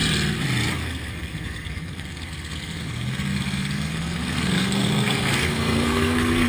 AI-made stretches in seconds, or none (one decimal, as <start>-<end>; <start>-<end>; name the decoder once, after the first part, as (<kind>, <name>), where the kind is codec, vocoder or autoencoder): 0.7-6.5 (codec, SNAC)